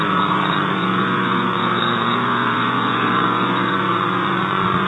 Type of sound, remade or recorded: remade